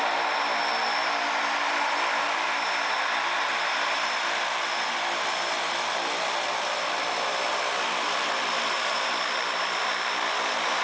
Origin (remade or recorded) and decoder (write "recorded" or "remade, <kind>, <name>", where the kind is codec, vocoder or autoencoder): recorded